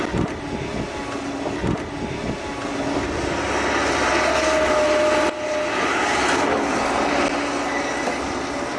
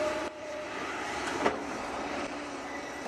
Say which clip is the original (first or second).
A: first